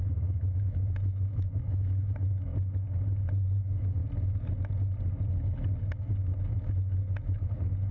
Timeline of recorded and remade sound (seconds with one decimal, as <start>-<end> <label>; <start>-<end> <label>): 0.0-2.5 remade; 2.5-3.6 recorded; 3.6-4.0 remade; 4.0-5.8 recorded; 5.8-7.9 remade